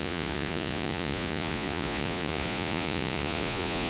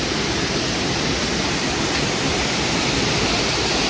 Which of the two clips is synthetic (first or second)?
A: first